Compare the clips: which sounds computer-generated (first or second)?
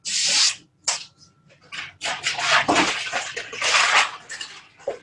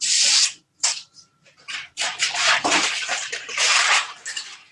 second